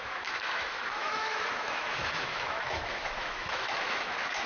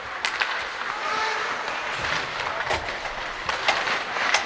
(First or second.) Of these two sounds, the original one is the second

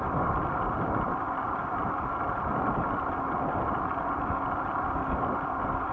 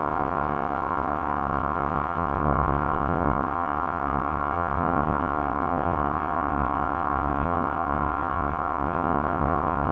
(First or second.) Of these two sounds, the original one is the first